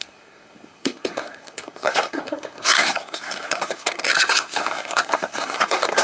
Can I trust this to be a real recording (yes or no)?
no